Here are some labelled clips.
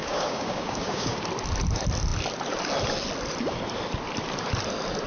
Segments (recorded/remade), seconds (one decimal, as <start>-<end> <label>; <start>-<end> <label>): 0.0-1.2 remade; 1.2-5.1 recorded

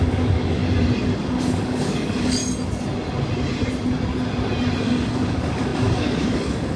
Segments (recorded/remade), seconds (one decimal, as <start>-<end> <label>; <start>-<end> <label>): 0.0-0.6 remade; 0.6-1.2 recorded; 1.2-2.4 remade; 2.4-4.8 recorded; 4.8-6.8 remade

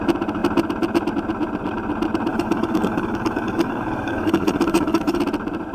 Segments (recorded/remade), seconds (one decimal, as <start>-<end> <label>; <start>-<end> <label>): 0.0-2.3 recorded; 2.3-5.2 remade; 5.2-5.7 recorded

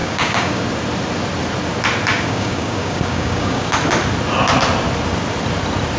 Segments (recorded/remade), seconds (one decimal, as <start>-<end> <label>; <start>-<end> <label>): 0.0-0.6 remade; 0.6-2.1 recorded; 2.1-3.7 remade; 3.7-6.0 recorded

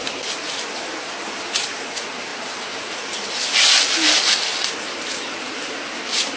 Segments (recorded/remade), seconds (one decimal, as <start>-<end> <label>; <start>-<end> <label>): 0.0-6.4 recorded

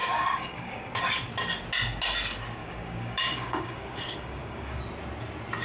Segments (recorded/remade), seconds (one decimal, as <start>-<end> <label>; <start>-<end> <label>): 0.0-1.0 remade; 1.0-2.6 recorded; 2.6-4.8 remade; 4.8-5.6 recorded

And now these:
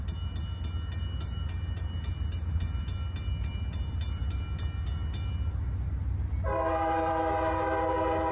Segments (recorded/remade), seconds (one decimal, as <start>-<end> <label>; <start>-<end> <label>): 0.0-8.3 recorded